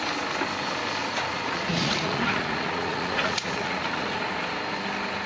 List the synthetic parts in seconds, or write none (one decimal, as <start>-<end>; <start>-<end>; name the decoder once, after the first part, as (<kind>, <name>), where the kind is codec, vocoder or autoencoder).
1.0-4.2 (vocoder, Vocos)